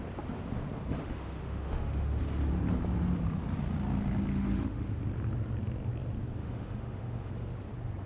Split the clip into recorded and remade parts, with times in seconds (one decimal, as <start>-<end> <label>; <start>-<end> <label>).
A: 0.0-1.0 recorded; 1.0-2.2 remade; 2.2-4.3 recorded; 4.3-5.0 remade; 5.0-6.4 recorded; 6.4-7.3 remade; 7.3-8.1 recorded